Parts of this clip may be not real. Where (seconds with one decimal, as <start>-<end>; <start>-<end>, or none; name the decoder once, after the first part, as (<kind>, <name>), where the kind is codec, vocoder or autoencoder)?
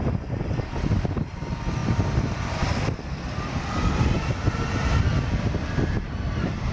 1.8-4.3 (vocoder, BigVGAN v2)